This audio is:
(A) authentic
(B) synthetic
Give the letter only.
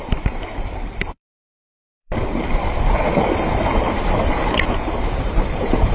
B